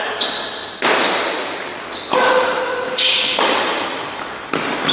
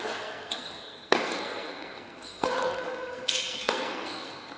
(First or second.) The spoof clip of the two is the second